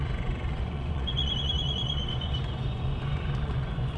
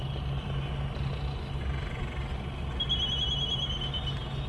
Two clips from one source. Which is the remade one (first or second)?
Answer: first